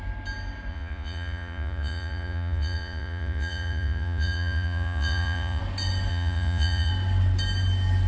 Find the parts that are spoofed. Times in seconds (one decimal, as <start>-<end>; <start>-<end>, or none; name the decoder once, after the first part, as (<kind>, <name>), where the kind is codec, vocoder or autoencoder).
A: 0.7-5.6 (vocoder, Vocos); 6.1-6.9